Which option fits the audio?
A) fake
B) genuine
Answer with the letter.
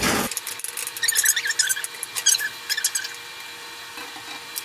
B